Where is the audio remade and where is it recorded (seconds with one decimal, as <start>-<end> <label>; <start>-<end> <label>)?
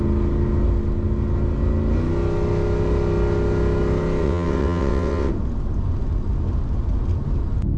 0.0-4.2 recorded; 4.2-5.3 remade; 5.3-7.8 recorded